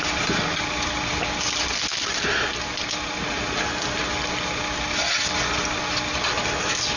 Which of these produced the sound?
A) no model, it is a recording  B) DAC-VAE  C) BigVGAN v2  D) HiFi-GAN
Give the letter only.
A